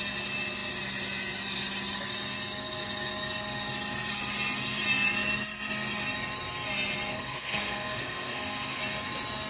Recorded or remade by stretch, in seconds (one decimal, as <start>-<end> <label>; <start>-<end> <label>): 0.0-7.1 recorded; 7.1-8.8 remade; 8.8-9.5 recorded